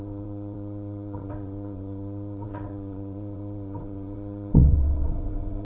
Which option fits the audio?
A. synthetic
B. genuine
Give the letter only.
A